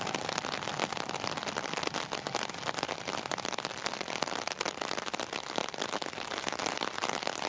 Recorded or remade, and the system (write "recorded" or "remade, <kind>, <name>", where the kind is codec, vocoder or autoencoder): recorded